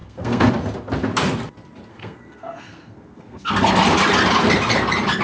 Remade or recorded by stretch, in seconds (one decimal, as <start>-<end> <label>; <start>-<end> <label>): 0.0-0.5 remade; 0.5-1.9 recorded; 1.9-3.5 remade; 3.5-5.2 recorded